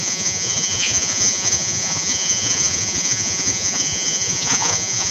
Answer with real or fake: fake